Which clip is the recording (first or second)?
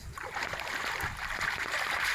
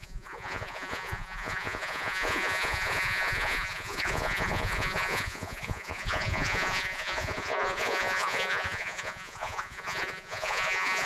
first